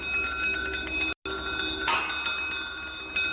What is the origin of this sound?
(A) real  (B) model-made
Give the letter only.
A